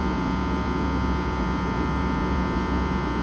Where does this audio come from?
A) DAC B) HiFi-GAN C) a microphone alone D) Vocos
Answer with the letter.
D